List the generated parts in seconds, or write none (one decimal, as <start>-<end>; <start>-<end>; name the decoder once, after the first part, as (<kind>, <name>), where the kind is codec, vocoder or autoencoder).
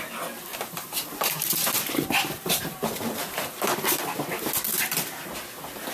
0.5-4.0 (vocoder, BigVGAN v2)